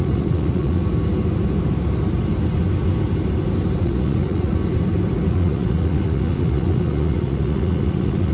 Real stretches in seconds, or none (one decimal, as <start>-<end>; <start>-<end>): 0.8-3.8; 4.6-5.3